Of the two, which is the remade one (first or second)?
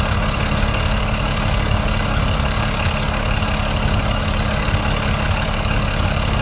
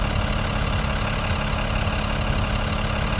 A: first